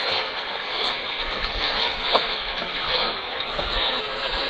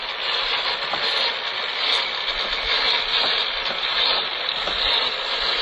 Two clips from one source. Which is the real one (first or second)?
second